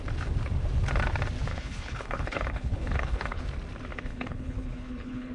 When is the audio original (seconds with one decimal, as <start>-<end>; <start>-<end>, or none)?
0.0-1.5; 3.4-3.9